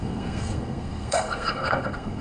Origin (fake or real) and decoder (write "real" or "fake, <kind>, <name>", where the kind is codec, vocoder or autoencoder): fake, codec, SNAC